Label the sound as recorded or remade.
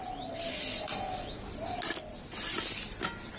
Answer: recorded